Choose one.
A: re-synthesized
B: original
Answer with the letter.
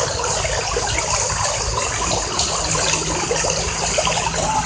B